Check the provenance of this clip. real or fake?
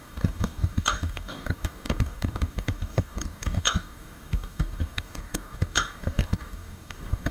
fake